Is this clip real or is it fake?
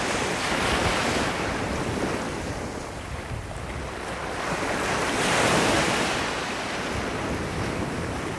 real